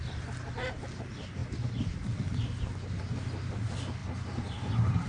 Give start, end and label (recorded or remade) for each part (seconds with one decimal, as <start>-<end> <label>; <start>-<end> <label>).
0.0-5.1 recorded